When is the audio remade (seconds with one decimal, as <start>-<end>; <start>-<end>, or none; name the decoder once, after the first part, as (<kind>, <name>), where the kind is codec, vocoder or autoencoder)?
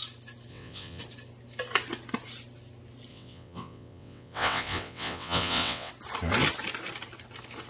0.5-1.0 (vocoder, WaveNeXt); 3.1-5.9